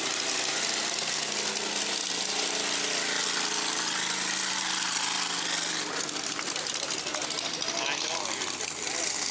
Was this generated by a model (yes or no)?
no